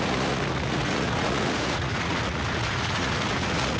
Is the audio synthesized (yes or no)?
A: yes